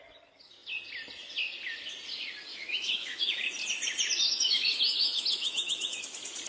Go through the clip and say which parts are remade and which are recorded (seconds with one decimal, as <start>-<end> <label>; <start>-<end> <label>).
0.0-2.5 recorded; 2.5-3.4 remade; 3.4-4.2 recorded; 4.2-6.0 remade; 6.0-6.5 recorded